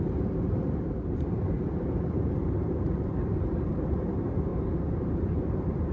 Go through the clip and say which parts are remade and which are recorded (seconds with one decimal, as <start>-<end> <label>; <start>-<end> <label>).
0.0-5.9 remade